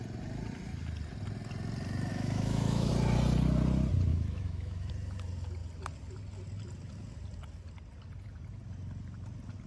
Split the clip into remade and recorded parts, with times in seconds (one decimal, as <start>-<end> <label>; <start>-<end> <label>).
0.0-2.1 recorded; 2.1-2.9 remade; 2.9-4.1 recorded; 4.1-4.9 remade; 4.9-9.7 recorded